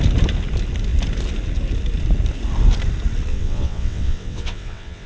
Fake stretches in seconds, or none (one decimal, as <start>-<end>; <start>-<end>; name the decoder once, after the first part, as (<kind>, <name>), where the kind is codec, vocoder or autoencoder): 3.3-5.1 (vocoder, WaveNeXt)